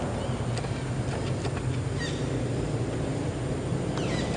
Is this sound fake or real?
real